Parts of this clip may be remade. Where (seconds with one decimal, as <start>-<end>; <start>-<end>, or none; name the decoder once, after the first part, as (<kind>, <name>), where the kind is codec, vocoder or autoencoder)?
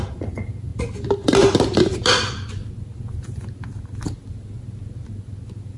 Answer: none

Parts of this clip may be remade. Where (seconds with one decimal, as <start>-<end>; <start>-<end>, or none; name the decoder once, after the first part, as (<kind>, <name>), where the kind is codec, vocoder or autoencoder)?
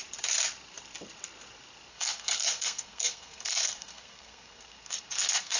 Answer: 1.9-5.6 (codec, SNAC)